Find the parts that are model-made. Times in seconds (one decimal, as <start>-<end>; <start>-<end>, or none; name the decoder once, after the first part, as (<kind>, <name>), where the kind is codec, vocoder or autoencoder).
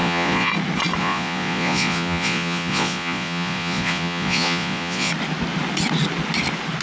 0.0-0.5 (vocoder, Vocos); 1.0-5.1